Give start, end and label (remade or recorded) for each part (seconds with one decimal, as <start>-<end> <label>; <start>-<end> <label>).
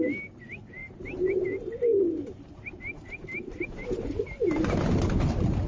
0.0-0.8 recorded; 0.8-1.3 remade; 1.3-5.7 recorded